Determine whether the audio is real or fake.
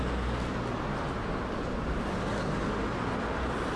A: real